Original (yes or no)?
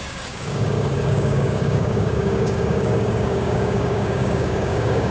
no